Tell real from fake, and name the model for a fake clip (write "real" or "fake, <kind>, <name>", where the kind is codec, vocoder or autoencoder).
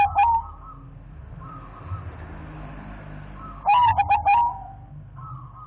real